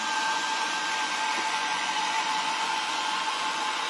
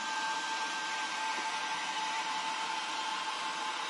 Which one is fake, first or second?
first